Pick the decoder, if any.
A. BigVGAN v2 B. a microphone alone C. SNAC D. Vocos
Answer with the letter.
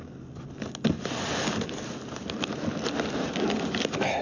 B